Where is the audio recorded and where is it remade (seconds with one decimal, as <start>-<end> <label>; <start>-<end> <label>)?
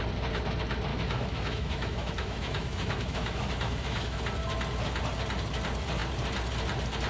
0.0-0.9 recorded; 0.9-4.2 remade; 4.2-7.1 recorded